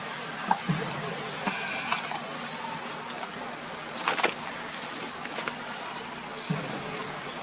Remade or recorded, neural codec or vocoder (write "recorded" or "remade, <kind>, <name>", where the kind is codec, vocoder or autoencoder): recorded